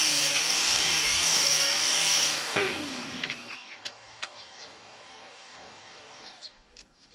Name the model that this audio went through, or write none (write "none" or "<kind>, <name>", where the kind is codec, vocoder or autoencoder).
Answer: codec, DAC